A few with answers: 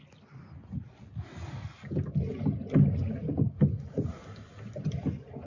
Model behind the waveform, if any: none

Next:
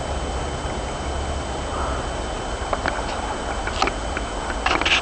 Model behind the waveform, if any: none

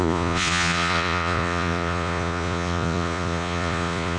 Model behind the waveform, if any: vocoder, Vocos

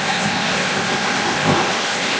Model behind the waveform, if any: codec, ZipCodec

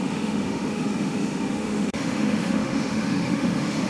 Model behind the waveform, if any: autoencoder, DAC-VAE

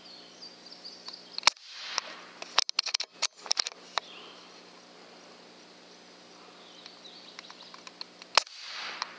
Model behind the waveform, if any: none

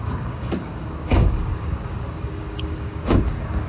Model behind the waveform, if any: codec, DAC